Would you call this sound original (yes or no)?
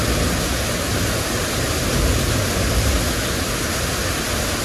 yes